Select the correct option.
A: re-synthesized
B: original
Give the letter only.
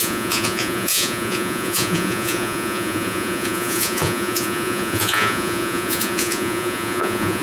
A